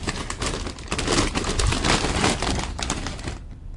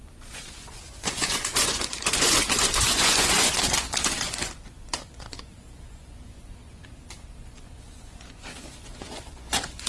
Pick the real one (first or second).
first